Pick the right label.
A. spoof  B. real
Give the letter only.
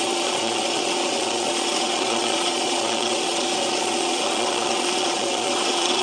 A